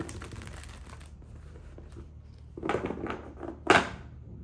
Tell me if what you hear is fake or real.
real